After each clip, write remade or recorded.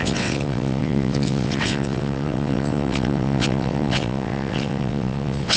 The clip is remade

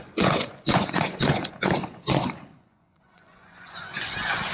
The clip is remade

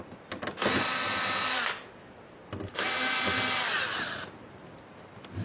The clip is recorded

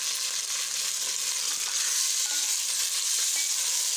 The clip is recorded